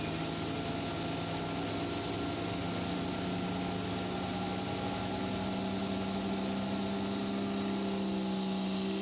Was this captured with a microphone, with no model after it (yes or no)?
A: yes